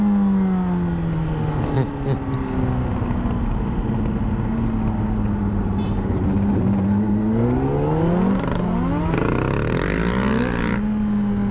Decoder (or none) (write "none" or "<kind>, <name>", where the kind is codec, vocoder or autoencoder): none